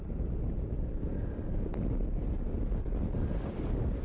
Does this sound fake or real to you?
fake